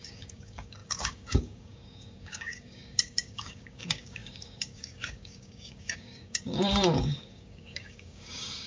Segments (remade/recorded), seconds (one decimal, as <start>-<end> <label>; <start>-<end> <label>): 0.0-8.7 remade